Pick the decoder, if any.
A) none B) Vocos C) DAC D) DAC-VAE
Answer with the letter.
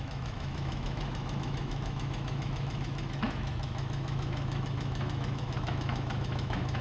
D